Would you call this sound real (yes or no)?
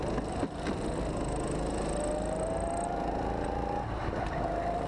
yes